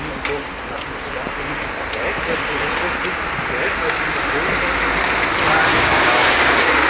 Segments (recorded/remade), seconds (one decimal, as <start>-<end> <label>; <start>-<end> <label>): 0.0-5.7 recorded; 5.7-6.9 remade